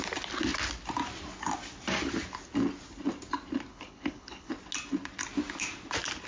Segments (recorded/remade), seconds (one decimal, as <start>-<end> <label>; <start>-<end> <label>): 0.0-3.7 recorded; 3.7-4.5 remade; 4.5-6.3 recorded